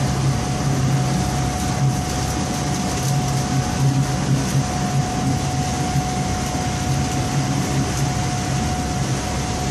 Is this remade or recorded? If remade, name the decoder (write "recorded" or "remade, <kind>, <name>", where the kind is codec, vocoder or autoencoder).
recorded